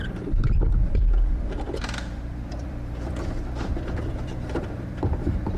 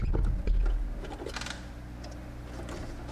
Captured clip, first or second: second